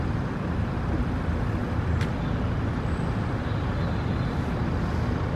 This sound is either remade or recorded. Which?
recorded